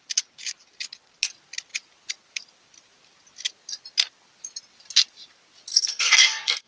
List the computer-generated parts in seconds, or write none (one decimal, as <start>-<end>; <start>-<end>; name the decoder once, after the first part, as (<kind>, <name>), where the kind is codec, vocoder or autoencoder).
5.7-6.7 (codec, SNAC)